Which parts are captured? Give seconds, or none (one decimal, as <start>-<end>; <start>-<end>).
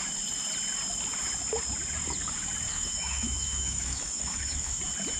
0.0-2.7; 4.8-5.2